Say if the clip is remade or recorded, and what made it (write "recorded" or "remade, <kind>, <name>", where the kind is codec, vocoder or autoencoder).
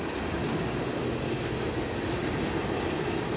recorded